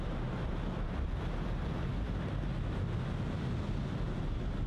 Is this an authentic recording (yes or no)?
yes